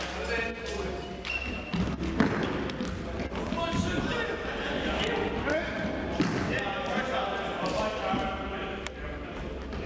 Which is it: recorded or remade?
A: recorded